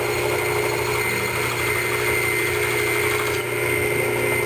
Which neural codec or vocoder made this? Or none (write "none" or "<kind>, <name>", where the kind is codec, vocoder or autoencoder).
none